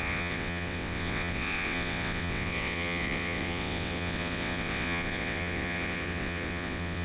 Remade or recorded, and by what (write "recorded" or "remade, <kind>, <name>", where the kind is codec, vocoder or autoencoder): remade, vocoder, WaveNeXt